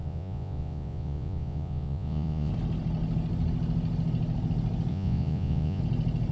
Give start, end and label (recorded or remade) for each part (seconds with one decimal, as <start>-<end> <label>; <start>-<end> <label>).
0.0-2.5 remade; 2.5-4.9 recorded; 4.9-5.8 remade; 5.8-6.3 recorded